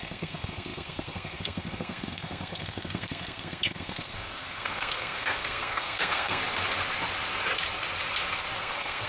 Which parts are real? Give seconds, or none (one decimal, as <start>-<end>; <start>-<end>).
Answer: 6.4-8.6